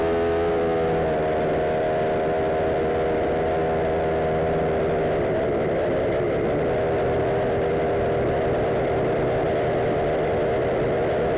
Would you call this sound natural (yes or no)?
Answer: yes